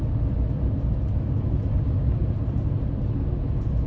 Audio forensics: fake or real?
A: real